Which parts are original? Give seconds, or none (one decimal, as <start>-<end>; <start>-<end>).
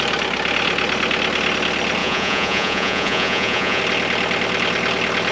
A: 0.0-2.0; 3.8-5.3